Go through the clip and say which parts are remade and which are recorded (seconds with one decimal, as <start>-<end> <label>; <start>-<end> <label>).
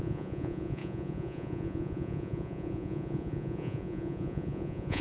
0.0-5.0 remade